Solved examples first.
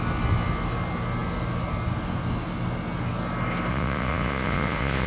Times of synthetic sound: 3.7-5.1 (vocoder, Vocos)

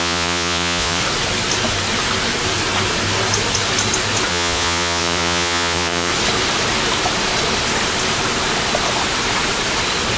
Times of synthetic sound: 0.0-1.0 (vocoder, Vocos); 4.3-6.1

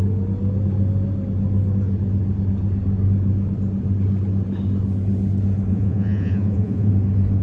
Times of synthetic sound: 5.7-6.9 (vocoder, Vocos)